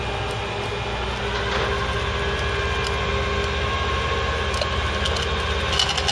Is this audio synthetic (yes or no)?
no